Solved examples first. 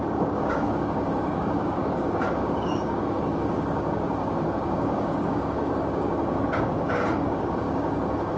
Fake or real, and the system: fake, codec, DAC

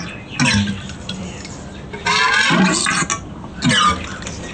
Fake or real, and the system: real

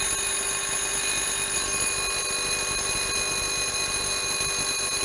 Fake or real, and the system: real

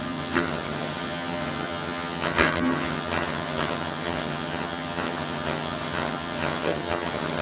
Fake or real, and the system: fake, vocoder, HiFi-GAN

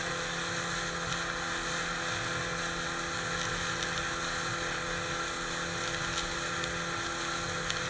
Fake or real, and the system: real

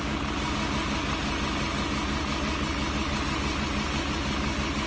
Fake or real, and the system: real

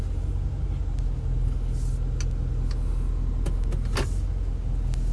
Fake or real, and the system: real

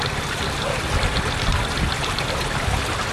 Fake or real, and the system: real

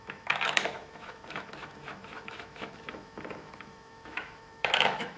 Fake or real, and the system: fake, autoencoder, DAC-VAE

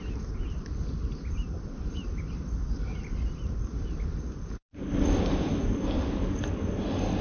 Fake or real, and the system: real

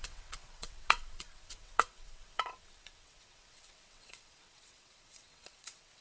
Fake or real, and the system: fake, vocoder, WaveNeXt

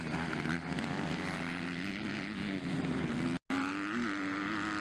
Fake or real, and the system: real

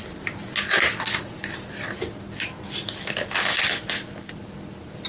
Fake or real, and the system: real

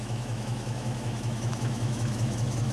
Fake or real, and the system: fake, autoencoder, DAC-VAE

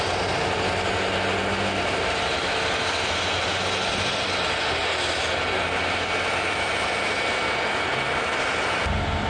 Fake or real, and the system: real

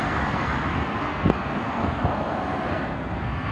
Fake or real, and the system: fake, codec, SNAC